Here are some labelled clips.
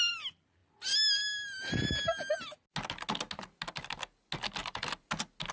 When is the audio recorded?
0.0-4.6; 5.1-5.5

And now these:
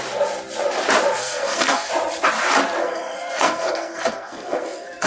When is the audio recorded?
0.0-1.2; 1.9-2.8

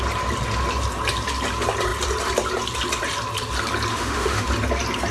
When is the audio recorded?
0.0-3.9; 4.5-5.1

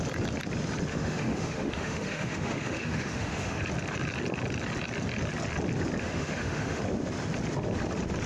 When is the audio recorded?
0.0-0.9; 3.6-6.0; 6.8-8.3